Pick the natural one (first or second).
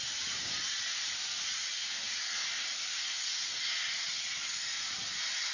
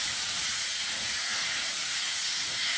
first